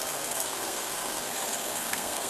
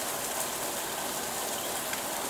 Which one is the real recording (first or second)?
second